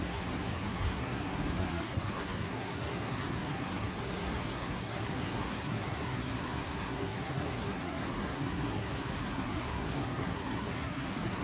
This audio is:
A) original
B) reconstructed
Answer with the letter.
B